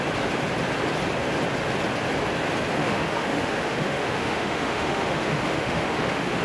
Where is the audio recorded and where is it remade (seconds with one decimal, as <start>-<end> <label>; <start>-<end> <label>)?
0.0-2.8 recorded; 2.8-6.4 remade